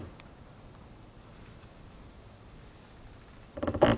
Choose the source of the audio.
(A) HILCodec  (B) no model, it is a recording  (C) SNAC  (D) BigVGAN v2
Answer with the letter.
B